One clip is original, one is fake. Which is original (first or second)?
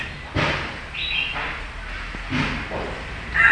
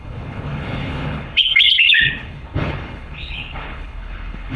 first